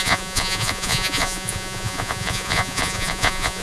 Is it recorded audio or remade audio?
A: remade